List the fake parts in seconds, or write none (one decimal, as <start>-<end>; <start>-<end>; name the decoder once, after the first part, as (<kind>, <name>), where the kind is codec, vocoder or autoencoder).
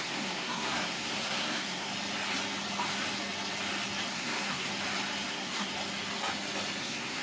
0.0-1.9 (codec, SNAC); 4.1-4.7; 5.3-5.7; 6.8-7.2